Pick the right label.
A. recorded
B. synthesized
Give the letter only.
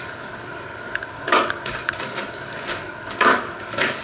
B